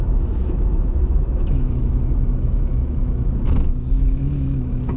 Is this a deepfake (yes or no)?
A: yes